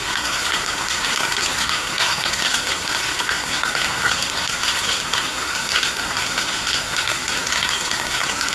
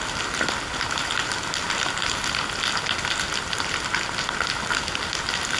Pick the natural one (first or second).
second